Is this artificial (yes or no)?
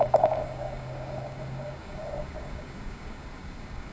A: yes